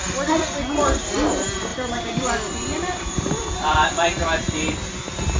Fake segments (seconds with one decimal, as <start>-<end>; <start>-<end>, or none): 1.7-4.9